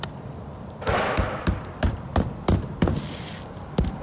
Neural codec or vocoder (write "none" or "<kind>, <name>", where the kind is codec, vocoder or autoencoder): vocoder, BigVGAN v2